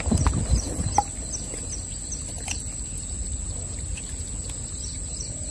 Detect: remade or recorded recorded